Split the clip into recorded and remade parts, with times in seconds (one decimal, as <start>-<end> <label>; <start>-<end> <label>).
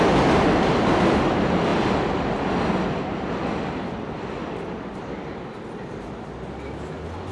0.0-7.3 recorded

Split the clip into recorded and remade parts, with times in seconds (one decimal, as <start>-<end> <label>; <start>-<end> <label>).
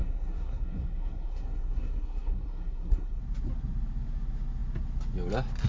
0.0-3.2 remade; 3.2-5.7 recorded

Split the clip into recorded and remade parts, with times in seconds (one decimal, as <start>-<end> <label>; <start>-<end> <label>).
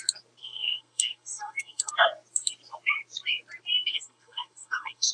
0.0-0.4 recorded; 0.4-1.9 remade; 1.9-3.9 recorded; 3.9-5.1 remade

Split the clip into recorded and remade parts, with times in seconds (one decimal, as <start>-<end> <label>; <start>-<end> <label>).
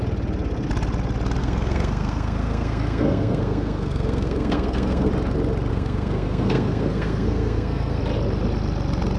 0.0-1.4 recorded; 1.4-5.1 remade; 5.1-5.7 recorded; 5.7-8.0 remade; 8.0-9.2 recorded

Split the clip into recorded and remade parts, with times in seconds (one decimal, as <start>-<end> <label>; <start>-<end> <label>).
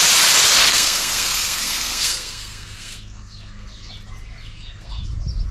0.0-0.7 recorded; 0.7-3.9 remade; 3.9-4.4 recorded; 4.4-5.0 remade; 5.0-5.5 recorded